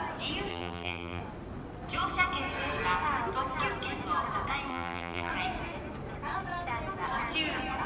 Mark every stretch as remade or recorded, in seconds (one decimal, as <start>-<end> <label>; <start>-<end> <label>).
0.0-0.5 recorded; 0.5-1.2 remade; 1.2-4.7 recorded; 4.7-5.3 remade; 5.3-7.9 recorded